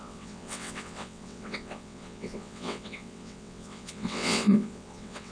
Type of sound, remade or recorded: remade